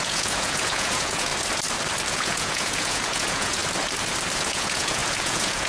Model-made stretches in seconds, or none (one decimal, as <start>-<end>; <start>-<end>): 0.0-1.3; 2.1-3.6; 4.4-5.7